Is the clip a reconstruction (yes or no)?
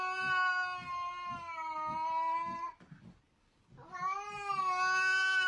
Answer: no